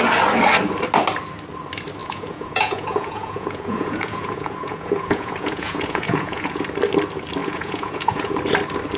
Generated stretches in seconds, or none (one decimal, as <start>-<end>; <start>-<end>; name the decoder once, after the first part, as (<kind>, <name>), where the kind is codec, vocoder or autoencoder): 2.0-6.6 (vocoder, Vocos); 7.4-8.3